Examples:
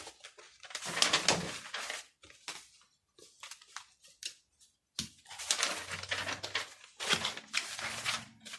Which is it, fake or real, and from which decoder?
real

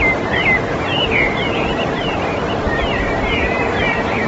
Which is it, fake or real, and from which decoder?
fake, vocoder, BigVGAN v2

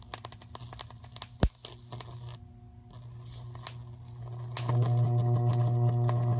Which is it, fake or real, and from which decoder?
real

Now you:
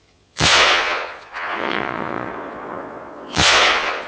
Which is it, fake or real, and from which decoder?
fake, vocoder, Vocos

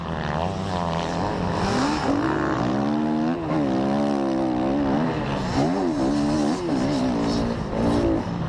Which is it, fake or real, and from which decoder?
real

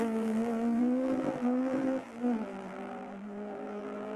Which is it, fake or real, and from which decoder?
fake, vocoder, BigVGAN v2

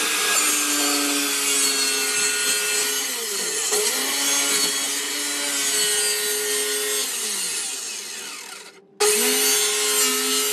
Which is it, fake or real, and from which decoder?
real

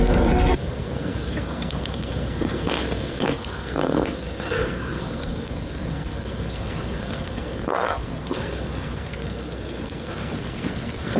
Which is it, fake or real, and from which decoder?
fake, codec, SNAC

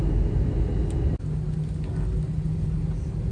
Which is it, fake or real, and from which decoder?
real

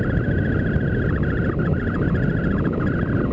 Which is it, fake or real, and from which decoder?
real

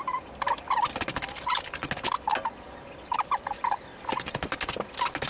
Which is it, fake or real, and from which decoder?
real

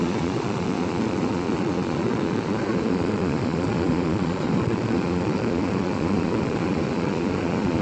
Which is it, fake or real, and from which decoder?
fake, vocoder, Vocos